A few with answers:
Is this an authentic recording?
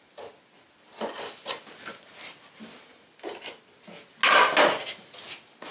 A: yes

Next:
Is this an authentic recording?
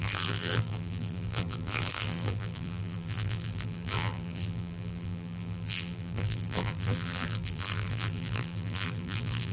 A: no